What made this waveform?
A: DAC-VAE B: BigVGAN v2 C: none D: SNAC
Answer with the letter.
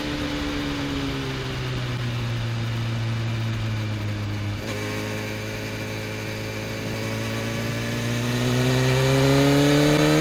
C